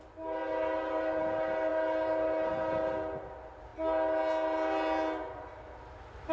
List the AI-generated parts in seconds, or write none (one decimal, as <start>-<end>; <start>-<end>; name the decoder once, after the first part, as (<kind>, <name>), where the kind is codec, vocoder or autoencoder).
none